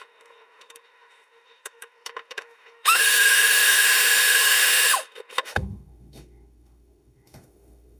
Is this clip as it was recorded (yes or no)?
no